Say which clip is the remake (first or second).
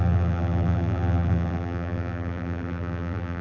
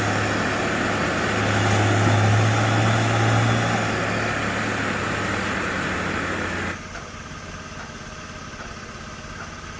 first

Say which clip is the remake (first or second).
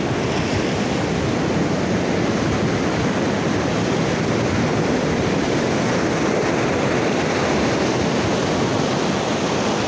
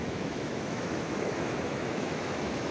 second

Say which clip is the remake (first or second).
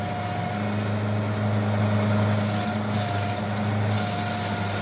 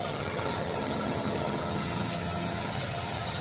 second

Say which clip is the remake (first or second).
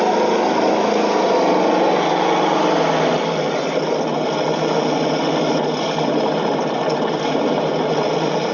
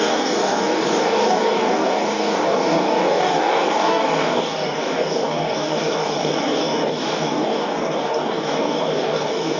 second